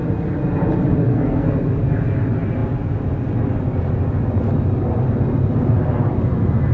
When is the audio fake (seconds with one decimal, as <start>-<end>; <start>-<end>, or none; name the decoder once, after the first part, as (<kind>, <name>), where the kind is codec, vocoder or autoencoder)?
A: 1.1-1.8 (codec, SNAC)